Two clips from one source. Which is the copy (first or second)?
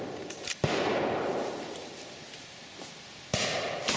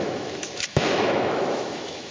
second